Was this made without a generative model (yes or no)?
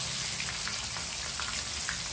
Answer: yes